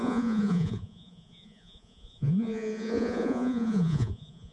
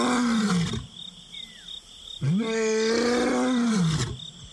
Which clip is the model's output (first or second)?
first